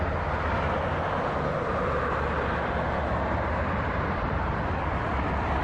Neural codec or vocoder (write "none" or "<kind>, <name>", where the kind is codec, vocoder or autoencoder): none